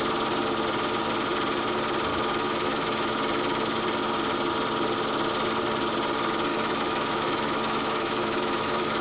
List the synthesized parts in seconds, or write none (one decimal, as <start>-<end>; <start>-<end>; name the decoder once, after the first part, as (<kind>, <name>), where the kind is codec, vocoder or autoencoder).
2.1-3.8 (autoencoder, DAC-VAE); 6.5-9.0